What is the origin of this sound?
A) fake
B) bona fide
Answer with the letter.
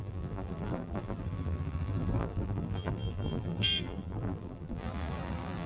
A